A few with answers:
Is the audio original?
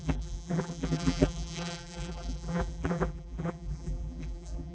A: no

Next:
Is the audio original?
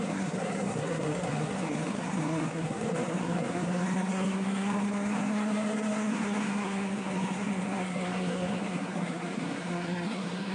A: no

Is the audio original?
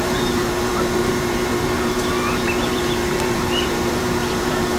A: no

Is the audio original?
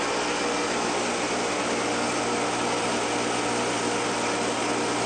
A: yes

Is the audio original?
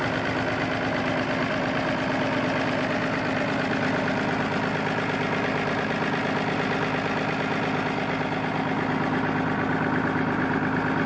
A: yes